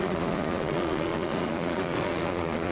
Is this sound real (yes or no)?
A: no